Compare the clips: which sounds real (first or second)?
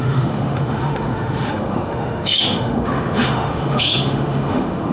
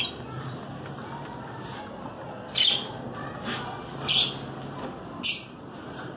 second